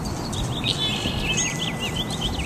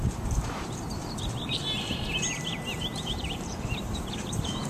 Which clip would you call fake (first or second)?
second